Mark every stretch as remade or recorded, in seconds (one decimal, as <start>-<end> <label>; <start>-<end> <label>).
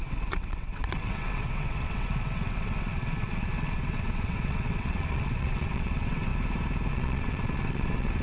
0.0-6.3 remade; 6.3-6.9 recorded; 6.9-8.2 remade